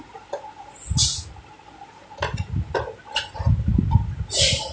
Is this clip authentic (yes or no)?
yes